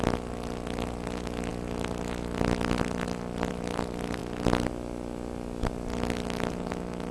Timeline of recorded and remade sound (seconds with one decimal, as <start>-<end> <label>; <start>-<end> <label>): 0.0-7.1 recorded